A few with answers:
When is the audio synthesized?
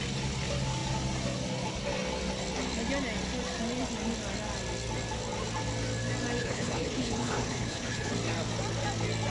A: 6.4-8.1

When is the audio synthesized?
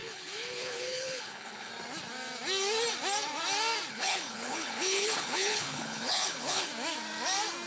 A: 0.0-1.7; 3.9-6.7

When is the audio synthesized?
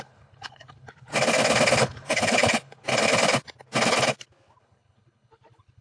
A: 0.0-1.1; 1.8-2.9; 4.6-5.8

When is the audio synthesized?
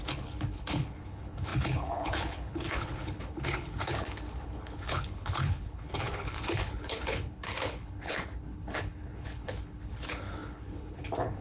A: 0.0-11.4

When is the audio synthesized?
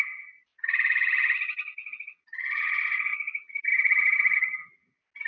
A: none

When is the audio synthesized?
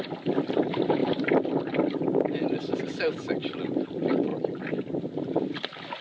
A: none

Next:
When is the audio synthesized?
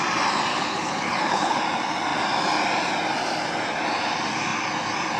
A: 0.5-1.6